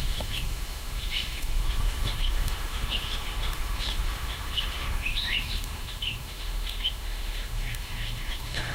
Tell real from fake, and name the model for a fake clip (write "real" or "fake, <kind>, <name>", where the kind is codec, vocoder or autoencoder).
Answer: fake, autoencoder, DAC-VAE